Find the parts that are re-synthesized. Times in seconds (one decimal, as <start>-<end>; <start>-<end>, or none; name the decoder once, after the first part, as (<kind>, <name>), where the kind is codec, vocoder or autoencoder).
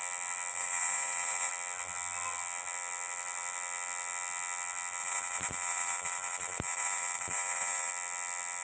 0.5-1.5 (vocoder, BigVGAN v2); 5.0-7.9